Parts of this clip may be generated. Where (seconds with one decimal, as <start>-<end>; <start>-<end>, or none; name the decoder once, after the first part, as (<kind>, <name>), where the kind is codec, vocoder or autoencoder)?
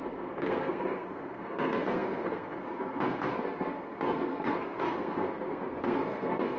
0.0-6.6 (codec, SNAC)